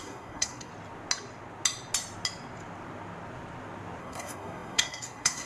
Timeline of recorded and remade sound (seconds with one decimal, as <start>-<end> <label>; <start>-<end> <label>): 0.0-0.7 remade; 0.7-4.0 recorded; 4.0-5.5 remade